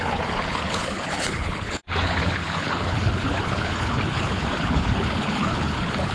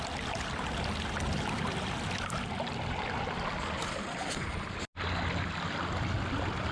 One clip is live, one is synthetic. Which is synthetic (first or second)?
first